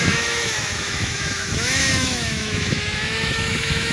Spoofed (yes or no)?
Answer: yes